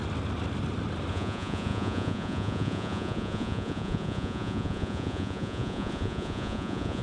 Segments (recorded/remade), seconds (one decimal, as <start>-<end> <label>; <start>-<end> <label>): 0.0-1.1 recorded; 1.1-7.0 remade